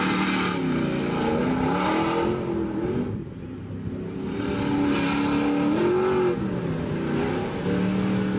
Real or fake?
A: real